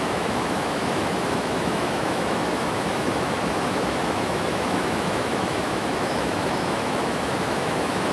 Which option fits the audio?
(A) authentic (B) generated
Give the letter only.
B